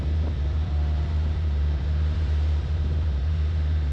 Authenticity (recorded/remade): remade